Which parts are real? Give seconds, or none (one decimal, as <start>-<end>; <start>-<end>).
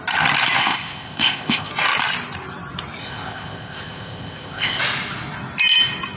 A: 0.0-0.6; 1.7-3.0; 4.8-6.2